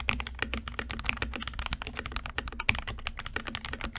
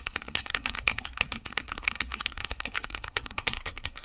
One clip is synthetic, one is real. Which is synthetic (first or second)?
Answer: second